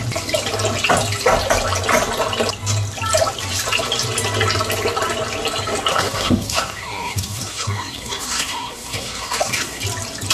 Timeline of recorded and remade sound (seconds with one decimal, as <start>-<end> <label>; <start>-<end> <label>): 0.0-5.9 recorded; 5.9-9.8 remade; 9.8-10.3 recorded